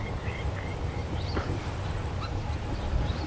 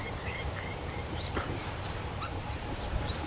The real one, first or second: first